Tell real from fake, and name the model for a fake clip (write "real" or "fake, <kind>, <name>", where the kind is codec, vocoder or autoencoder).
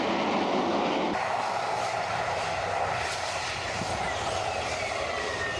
real